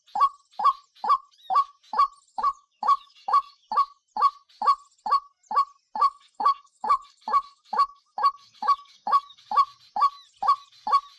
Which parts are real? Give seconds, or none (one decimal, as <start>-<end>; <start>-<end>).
0.0-2.3; 3.6-6.0; 9.4-11.2